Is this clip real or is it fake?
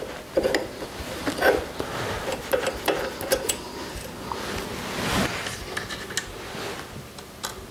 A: real